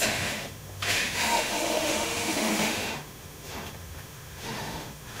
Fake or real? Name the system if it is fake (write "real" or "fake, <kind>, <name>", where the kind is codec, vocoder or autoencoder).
fake, autoencoder, DAC-VAE